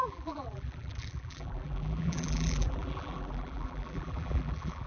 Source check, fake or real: fake